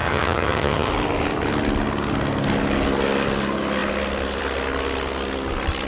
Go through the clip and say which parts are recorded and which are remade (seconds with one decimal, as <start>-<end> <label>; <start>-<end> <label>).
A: 0.0-0.9 remade; 0.9-5.9 recorded